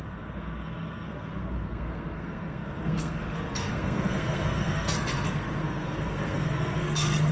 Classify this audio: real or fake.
fake